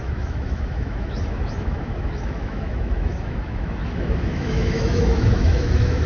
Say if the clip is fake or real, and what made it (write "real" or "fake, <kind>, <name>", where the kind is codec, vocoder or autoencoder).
fake, autoencoder, DAC-VAE